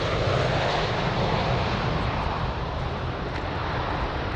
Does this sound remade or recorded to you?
recorded